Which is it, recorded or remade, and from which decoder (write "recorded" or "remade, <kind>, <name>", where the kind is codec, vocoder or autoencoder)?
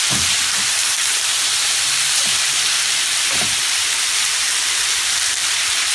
remade, vocoder, BigVGAN v2